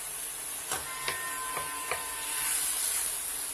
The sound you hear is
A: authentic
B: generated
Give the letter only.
A